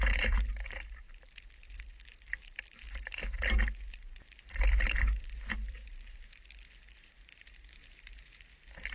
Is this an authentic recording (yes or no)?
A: no